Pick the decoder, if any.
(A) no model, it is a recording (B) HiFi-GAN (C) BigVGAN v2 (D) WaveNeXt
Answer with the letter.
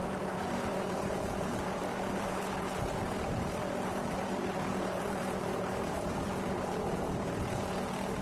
C